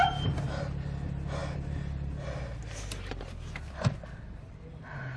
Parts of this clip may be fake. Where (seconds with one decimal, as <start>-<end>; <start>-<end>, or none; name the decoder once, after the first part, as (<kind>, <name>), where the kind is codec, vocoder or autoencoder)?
none